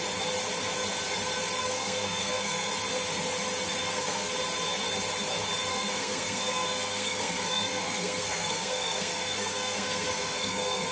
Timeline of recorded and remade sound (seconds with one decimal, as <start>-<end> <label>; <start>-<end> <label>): 0.0-1.6 recorded; 1.6-2.7 remade; 2.7-3.8 recorded; 3.8-4.3 remade; 4.3-5.7 recorded; 5.7-10.9 remade